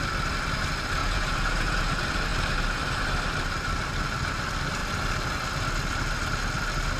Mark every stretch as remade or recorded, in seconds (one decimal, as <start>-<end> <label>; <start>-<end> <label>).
0.0-1.0 recorded; 1.0-1.8 remade; 1.8-7.0 recorded